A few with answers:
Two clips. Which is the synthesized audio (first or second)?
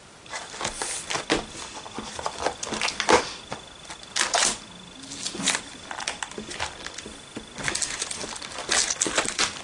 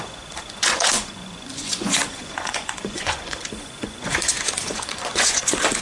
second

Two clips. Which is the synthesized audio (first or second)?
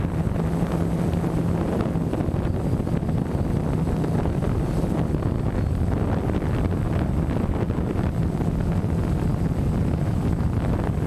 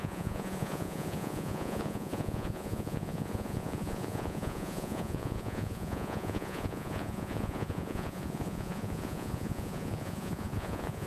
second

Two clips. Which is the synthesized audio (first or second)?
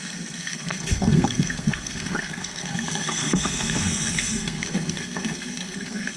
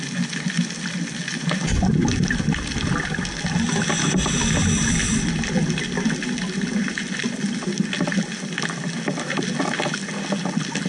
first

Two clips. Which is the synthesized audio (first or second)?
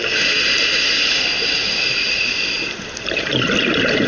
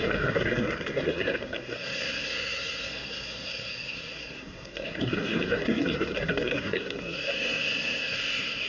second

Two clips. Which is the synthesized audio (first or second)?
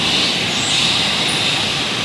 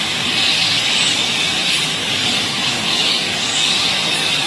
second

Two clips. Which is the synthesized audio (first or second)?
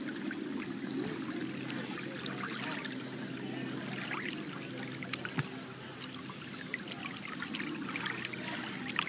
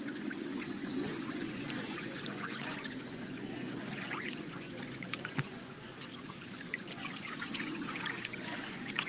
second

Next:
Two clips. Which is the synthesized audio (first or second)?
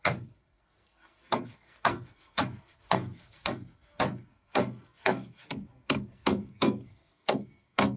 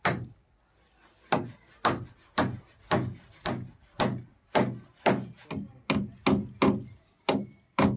first